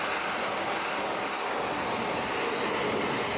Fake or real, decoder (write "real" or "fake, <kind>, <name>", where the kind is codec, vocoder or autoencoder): real